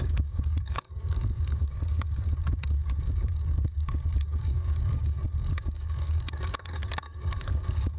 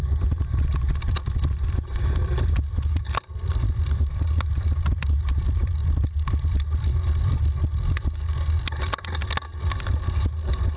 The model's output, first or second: first